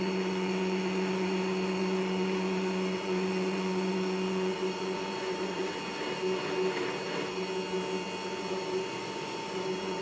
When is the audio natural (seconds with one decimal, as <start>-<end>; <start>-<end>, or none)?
5.7-8.5